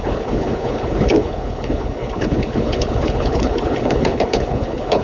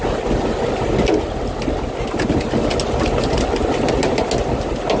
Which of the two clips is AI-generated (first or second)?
first